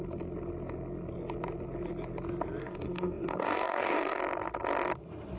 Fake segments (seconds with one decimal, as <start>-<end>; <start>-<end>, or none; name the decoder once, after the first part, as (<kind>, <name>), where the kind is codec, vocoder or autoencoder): 2.6-4.2 (codec, DAC)